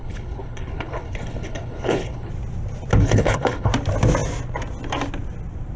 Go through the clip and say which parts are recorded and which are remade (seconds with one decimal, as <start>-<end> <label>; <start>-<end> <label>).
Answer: 0.0-2.3 remade; 2.3-3.0 recorded; 3.0-3.7 remade; 3.7-5.8 recorded